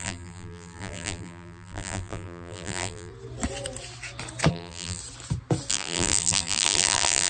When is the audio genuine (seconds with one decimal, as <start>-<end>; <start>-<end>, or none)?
3.1-4.5; 5.0-5.7